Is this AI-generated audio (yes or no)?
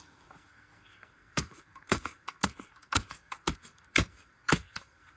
yes